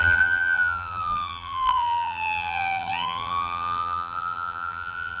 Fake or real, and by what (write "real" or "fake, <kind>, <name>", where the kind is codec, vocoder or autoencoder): fake, vocoder, BigVGAN v2